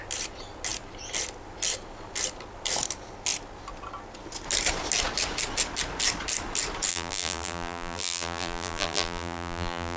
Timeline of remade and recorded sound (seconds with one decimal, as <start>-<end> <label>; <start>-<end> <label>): 0.0-6.9 recorded; 6.9-10.0 remade